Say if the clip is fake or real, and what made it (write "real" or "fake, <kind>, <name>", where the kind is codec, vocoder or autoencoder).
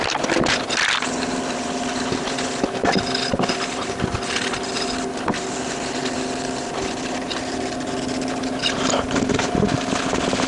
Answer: real